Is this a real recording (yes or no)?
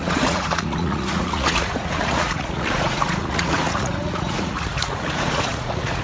no